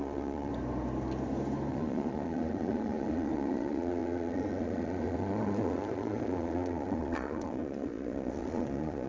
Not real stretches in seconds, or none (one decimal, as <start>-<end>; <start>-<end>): 0.0-0.5; 1.7-9.1